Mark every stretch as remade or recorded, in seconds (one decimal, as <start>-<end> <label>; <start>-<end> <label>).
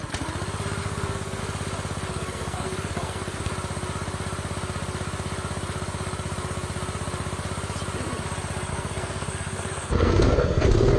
0.0-0.8 recorded; 0.8-1.4 remade; 1.4-2.1 recorded; 2.1-3.5 remade; 3.5-8.7 recorded; 8.7-11.0 remade